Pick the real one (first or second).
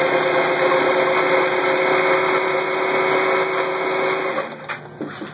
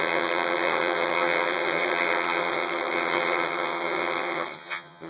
first